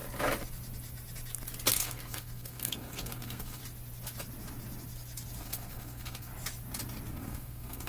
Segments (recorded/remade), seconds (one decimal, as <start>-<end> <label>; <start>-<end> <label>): 0.0-1.7 recorded; 1.7-3.6 remade; 3.6-5.4 recorded; 5.4-6.3 remade; 6.3-7.1 recorded; 7.1-7.9 remade